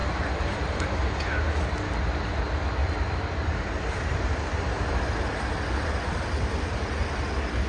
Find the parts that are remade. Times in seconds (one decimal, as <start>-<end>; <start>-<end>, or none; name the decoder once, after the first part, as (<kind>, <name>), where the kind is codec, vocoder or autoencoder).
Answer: 0.0-1.4 (vocoder, BigVGAN v2); 2.8-5.5